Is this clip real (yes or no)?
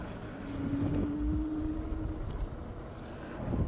yes